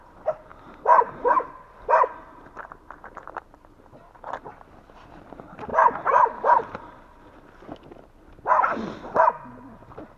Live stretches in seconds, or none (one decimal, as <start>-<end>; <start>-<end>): 0.0-10.2